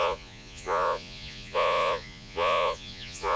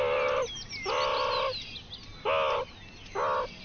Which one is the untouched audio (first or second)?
second